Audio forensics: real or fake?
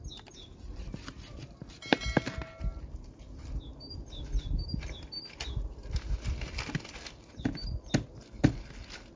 real